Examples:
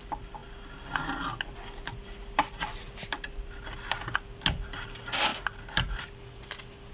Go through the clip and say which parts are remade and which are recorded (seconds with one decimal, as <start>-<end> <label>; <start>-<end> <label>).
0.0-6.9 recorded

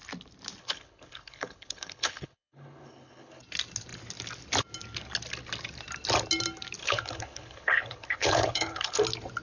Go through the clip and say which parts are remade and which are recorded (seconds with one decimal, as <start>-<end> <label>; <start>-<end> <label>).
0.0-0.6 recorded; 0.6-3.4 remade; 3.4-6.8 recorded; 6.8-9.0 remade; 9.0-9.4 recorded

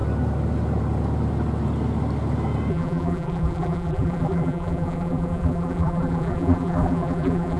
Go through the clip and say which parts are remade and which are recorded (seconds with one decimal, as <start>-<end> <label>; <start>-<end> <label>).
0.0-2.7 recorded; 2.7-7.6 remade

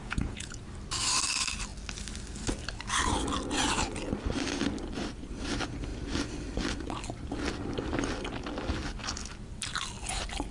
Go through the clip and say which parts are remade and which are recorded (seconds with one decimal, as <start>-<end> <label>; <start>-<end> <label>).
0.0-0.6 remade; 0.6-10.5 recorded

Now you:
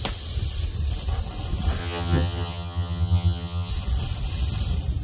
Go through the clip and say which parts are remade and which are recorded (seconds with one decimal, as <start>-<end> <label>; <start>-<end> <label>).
0.0-1.8 recorded; 1.8-3.7 remade; 3.7-5.0 recorded

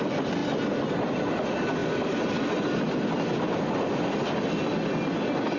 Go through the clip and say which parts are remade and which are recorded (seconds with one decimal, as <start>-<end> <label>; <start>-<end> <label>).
0.0-5.6 recorded

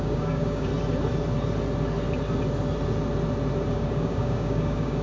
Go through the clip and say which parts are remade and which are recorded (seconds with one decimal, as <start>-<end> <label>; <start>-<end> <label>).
0.0-0.7 remade; 0.7-3.7 recorded; 3.7-5.0 remade

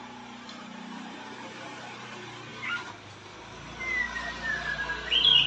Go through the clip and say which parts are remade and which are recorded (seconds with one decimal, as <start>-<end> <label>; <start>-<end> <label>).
0.0-5.5 recorded